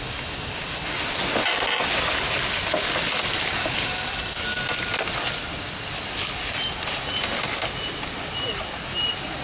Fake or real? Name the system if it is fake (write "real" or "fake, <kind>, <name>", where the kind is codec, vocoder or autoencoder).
real